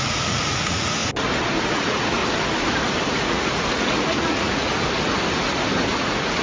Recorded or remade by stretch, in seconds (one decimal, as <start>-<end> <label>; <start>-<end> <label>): 0.0-1.0 remade; 1.0-1.7 recorded; 1.7-2.2 remade; 2.2-3.1 recorded; 3.1-4.7 remade; 4.7-5.9 recorded; 5.9-6.4 remade